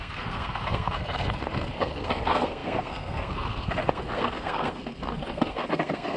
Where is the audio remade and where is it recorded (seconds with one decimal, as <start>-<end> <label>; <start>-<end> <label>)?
0.0-6.2 remade

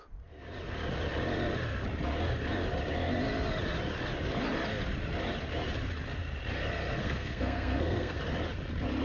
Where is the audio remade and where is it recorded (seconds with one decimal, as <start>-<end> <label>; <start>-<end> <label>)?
0.0-7.0 recorded; 7.0-8.2 remade; 8.2-9.0 recorded

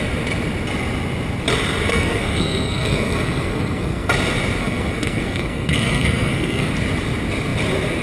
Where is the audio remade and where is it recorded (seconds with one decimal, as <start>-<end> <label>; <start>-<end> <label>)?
0.0-1.9 recorded; 1.9-4.1 remade; 4.1-4.6 recorded; 4.6-6.7 remade; 6.7-8.0 recorded

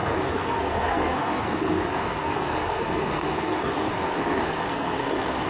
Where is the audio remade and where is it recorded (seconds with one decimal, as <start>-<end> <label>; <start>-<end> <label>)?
0.0-5.5 remade